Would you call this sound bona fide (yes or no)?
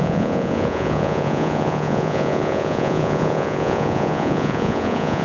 no